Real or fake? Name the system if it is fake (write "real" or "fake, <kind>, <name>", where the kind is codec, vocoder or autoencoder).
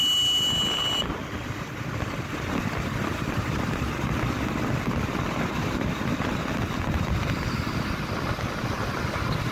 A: real